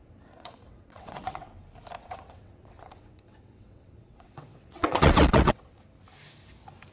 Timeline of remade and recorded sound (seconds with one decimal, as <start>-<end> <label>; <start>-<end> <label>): 0.0-1.5 remade; 1.5-2.0 recorded; 2.0-5.8 remade; 5.8-6.9 recorded